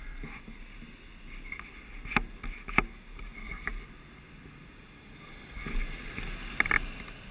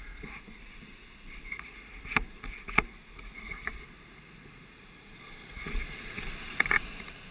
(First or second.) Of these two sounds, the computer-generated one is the second